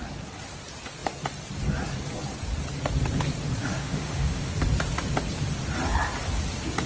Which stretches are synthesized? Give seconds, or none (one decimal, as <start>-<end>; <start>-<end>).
3.6-4.5